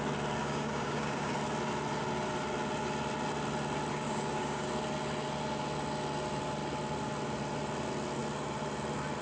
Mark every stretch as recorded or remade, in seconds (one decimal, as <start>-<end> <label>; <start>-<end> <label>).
0.0-0.4 recorded; 0.4-1.3 remade; 1.3-3.9 recorded; 3.9-4.7 remade; 4.7-9.2 recorded